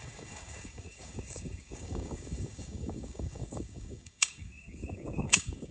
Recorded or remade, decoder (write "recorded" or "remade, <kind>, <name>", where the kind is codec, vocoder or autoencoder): remade, codec, DAC